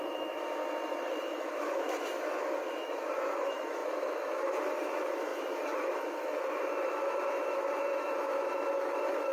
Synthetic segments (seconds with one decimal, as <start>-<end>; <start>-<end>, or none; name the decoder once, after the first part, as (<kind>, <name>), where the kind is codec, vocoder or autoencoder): 0.0-0.6 (autoencoder, DAC-VAE); 1.1-9.3